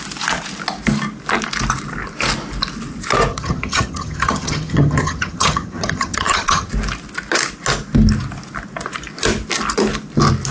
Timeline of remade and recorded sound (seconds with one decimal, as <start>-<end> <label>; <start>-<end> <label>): 0.0-3.3 recorded; 3.3-6.7 remade; 6.7-10.5 recorded